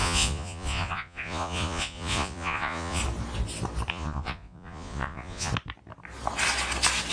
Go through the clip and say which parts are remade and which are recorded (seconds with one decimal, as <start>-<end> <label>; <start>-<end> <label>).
0.0-3.0 remade; 3.0-3.9 recorded; 3.9-5.5 remade; 5.5-7.1 recorded